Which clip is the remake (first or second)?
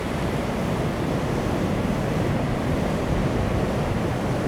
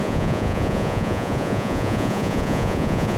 second